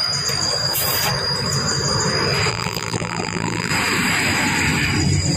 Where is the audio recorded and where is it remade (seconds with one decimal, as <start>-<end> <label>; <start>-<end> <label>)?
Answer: 0.0-2.5 recorded; 2.5-3.7 remade; 3.7-5.4 recorded